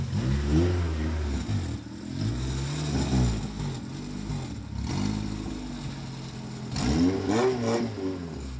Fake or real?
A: real